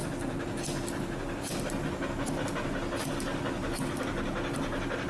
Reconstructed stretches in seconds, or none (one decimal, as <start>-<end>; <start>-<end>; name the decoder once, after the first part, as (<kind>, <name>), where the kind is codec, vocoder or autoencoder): none